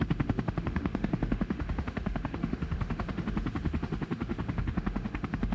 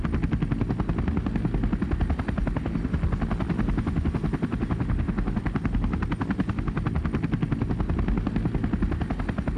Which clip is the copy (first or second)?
first